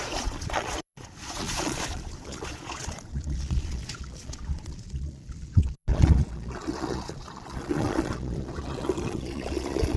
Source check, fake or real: fake